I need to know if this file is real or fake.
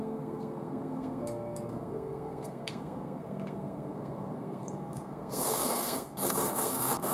fake